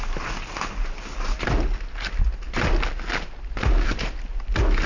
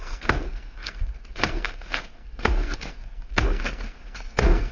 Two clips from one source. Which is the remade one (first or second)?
second